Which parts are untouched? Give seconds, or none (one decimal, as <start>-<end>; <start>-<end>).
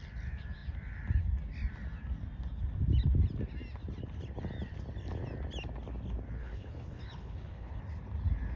0.0-6.4; 7.8-8.6